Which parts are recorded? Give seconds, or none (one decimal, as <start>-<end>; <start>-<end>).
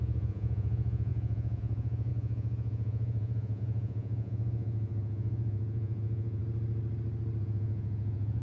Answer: 6.4-7.4